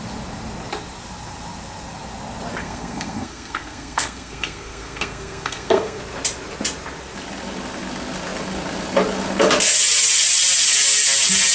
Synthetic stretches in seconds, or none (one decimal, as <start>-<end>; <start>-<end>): 2.6-6.0